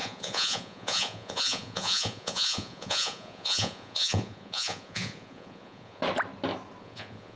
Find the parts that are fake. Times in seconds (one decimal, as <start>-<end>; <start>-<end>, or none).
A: 0.0-6.0; 6.8-7.4